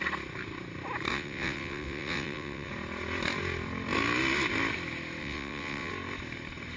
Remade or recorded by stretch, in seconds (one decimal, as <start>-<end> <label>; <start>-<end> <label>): 0.0-1.1 recorded; 1.1-2.7 remade; 2.7-5.2 recorded; 5.2-5.9 remade; 5.9-6.8 recorded